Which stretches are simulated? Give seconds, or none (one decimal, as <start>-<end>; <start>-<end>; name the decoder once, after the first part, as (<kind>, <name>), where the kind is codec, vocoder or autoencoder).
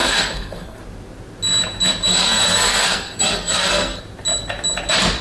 0.0-0.8 (codec, SNAC); 2.1-4.0